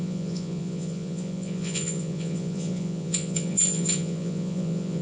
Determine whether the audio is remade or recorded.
remade